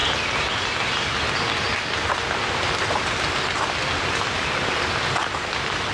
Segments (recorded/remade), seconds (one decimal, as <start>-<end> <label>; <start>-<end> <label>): 0.0-5.9 recorded